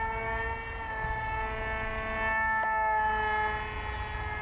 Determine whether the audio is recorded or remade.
recorded